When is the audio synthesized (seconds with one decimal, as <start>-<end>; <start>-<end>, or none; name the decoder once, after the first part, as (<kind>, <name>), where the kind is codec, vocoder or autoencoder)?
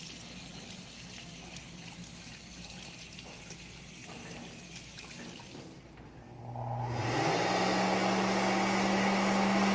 none